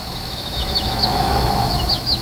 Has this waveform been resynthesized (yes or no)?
yes